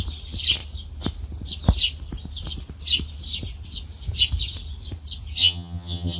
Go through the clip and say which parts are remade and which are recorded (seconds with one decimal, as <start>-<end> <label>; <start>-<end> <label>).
0.0-5.4 recorded; 5.4-6.2 remade